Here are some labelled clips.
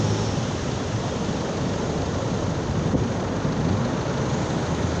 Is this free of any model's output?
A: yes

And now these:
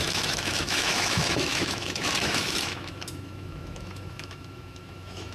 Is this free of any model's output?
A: no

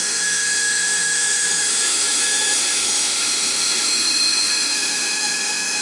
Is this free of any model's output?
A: no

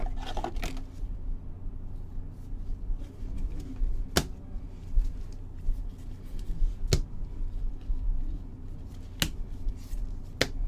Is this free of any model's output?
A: yes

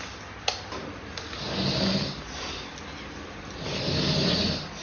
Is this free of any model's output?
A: yes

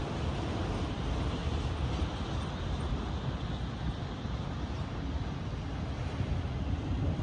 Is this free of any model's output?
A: yes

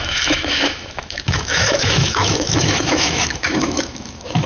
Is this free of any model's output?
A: no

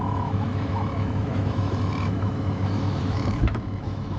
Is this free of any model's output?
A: no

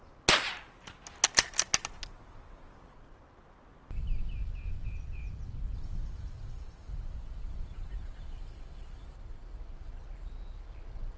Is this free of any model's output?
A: yes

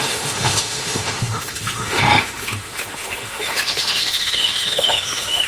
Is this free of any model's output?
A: no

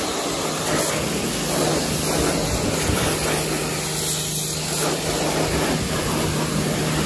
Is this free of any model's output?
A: yes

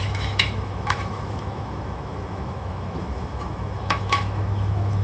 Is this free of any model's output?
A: no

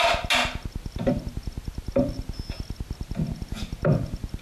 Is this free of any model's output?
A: yes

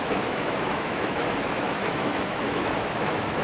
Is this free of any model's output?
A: no